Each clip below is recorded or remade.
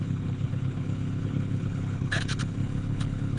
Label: remade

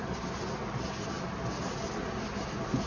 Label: recorded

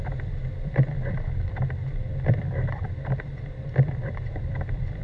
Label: remade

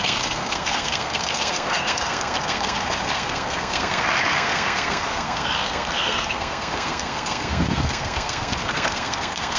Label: remade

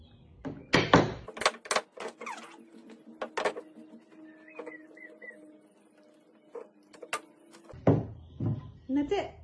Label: recorded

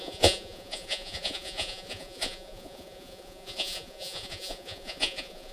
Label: remade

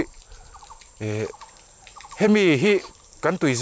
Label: remade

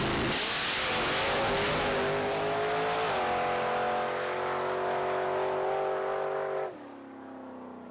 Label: recorded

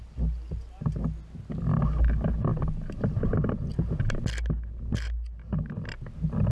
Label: recorded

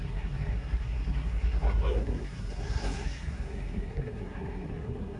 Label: remade